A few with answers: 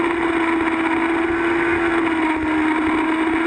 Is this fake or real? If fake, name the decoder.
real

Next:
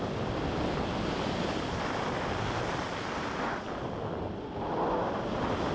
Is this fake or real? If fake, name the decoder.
real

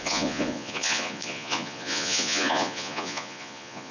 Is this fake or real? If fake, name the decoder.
fake, vocoder, Vocos